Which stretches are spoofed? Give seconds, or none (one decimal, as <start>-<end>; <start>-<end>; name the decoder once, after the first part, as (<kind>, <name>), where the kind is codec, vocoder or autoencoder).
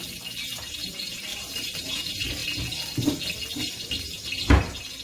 1.3-2.0 (vocoder, BigVGAN v2)